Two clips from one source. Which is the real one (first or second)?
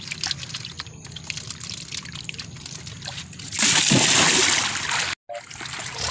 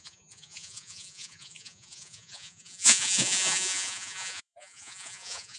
first